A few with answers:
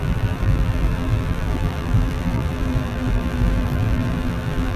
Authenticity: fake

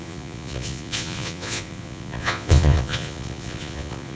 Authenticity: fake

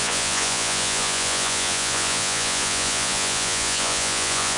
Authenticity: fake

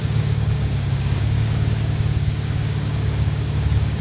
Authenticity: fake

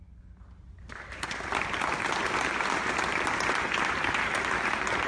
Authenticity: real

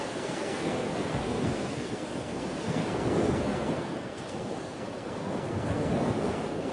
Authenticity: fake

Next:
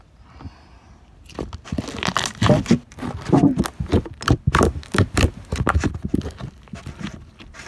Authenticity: real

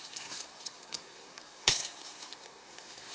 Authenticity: fake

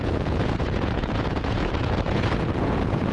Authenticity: fake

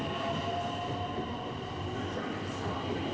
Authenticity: real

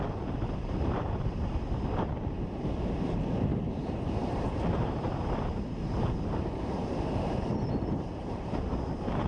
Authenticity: fake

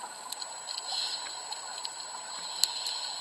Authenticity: real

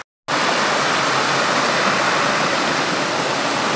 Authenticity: real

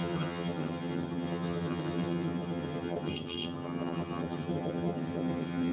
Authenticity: fake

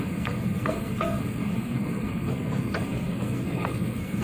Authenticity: fake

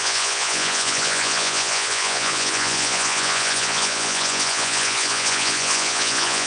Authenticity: fake